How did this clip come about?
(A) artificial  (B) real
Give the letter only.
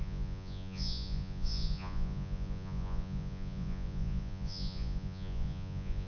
A